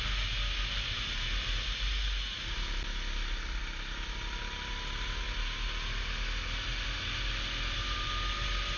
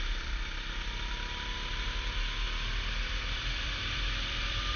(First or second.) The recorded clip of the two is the first